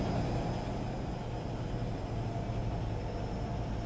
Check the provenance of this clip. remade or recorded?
recorded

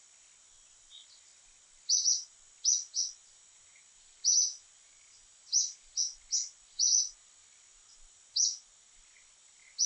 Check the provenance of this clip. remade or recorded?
recorded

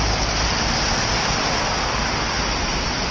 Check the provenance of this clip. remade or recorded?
recorded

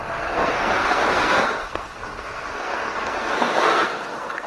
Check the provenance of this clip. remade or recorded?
remade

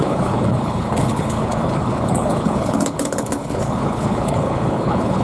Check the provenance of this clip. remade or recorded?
remade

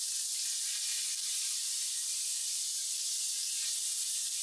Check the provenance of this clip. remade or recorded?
recorded